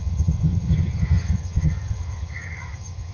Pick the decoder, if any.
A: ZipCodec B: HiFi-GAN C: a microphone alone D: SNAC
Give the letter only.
B